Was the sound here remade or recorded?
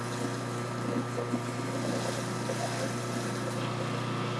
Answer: recorded